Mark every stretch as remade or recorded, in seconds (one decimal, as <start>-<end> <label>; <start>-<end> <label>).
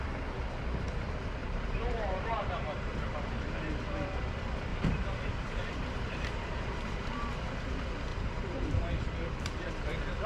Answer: 0.0-1.4 recorded; 1.4-3.1 remade; 3.1-4.7 recorded; 4.7-7.4 remade; 7.4-8.1 recorded; 8.1-8.9 remade; 8.9-10.3 recorded